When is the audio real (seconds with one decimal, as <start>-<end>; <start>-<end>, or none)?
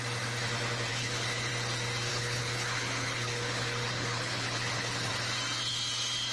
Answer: 0.0-0.9; 1.5-2.1; 5.1-6.3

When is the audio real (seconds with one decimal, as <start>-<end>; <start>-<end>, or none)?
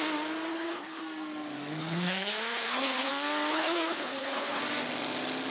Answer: 0.0-0.5; 1.0-1.8; 3.1-3.5; 4.6-5.5